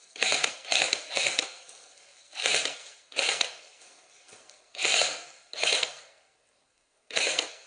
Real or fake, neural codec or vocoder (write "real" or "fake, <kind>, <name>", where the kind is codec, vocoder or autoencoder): fake, codec, SNAC